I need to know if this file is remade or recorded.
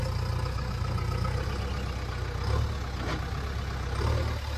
recorded